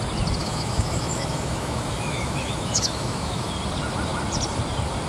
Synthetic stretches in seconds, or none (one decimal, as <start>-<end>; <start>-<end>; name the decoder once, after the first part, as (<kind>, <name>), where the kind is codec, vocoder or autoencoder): 0.4-3.5 (autoencoder, DAC-VAE)